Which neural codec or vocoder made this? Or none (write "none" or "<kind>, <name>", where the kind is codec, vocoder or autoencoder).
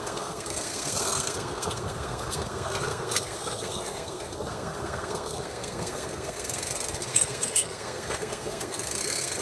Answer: codec, SNAC